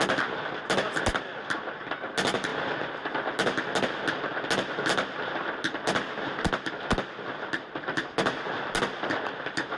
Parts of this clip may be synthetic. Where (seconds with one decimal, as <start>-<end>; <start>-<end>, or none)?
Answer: none